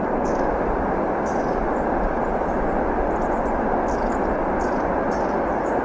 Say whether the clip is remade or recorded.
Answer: recorded